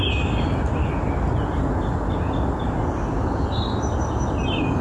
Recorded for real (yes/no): yes